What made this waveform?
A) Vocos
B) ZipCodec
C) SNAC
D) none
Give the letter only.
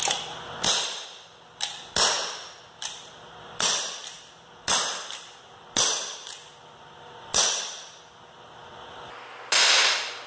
D